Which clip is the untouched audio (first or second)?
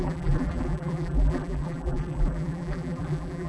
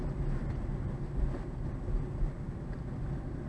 second